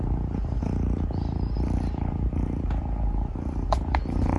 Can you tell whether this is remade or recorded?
remade